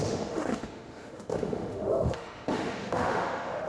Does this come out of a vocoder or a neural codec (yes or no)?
yes